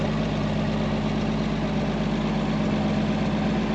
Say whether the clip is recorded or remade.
recorded